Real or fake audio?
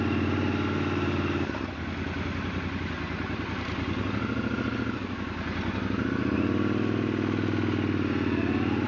real